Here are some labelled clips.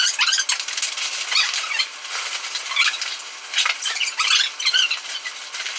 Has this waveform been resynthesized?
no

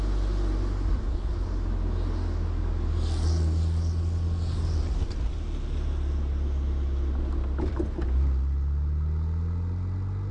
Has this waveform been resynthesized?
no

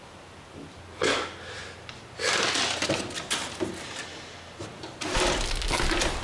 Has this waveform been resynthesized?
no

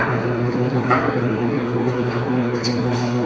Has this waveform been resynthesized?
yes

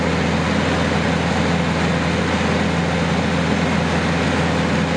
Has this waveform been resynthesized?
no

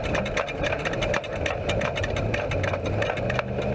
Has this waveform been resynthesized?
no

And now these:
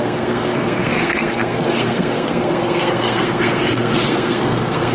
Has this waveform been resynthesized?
yes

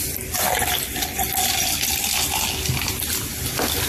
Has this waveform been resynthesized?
no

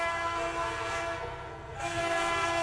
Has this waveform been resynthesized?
yes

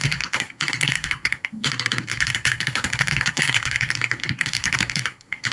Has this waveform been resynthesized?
yes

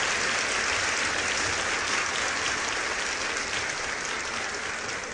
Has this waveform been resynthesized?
no